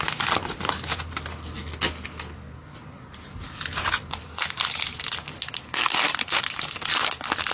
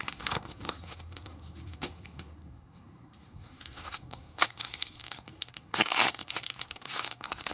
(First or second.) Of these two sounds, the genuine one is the first